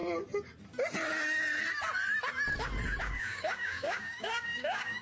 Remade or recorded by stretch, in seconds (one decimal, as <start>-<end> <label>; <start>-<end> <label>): 0.0-3.0 recorded; 3.0-5.0 remade